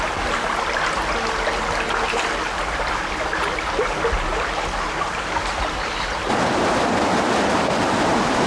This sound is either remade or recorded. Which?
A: recorded